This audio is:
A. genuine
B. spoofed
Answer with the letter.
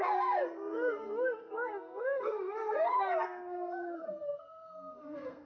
B